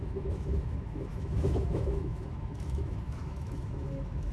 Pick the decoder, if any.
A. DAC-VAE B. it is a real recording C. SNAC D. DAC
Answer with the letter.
A